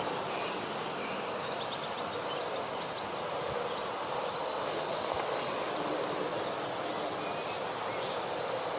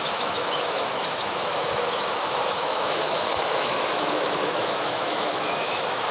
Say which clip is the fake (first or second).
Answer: second